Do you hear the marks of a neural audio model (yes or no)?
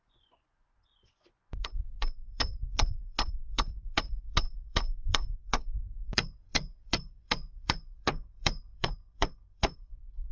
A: yes